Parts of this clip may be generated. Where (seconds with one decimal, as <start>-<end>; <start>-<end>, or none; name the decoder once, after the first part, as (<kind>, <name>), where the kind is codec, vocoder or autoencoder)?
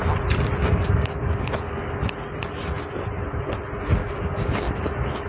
0.6-1.8 (codec, DAC); 4.0-4.8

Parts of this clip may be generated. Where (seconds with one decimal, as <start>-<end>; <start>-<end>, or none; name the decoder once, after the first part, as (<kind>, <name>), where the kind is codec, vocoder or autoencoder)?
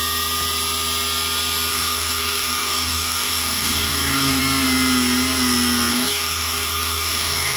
1.7-4.4 (codec, DAC); 5.9-7.6